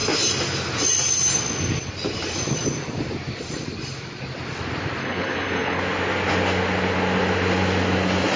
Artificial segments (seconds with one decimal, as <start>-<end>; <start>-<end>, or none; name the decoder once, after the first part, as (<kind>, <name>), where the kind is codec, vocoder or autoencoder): 5.0-5.8 (codec, HILCodec)